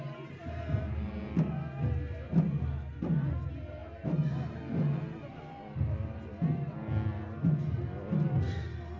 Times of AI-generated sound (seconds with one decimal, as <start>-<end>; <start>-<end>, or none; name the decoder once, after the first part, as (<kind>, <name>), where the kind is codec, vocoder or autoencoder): none